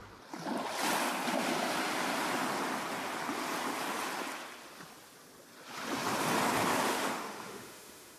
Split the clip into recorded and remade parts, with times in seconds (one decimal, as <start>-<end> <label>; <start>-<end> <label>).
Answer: 0.0-6.9 recorded; 6.9-8.2 remade